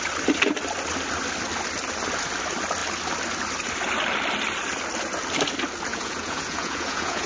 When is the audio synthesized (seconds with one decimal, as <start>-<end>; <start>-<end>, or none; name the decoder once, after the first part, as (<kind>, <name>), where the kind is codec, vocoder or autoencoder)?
5.9-7.3 (vocoder, Vocos)